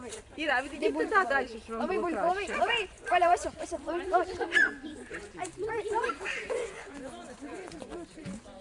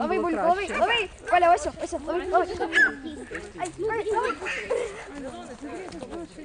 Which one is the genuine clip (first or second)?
second